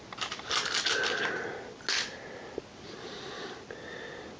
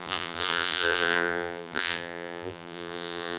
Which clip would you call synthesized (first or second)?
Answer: second